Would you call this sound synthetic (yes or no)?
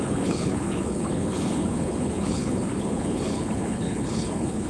yes